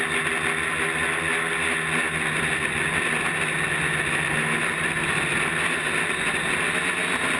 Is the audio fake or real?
real